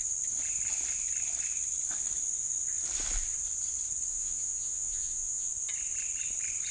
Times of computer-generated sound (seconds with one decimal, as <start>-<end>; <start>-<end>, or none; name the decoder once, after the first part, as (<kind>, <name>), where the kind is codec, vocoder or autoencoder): 4.1-5.5 (vocoder, Vocos)